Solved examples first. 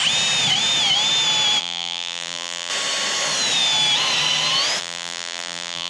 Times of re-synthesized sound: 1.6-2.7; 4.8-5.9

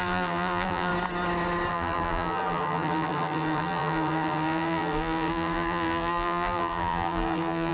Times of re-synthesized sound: 0.0-0.9; 1.7-7.7

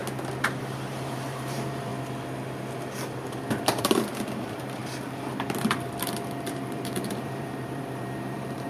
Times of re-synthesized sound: 0.6-1.9; 3.8-4.8; 6.3-8.7

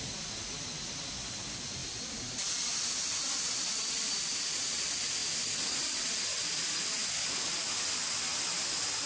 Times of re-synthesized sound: 1.8-4.3; 5.2-6.5

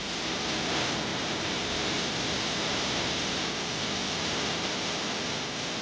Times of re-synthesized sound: 1.1-3.5

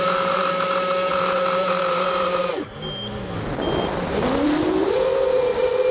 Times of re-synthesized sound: 0.0-0.4; 1.1-2.4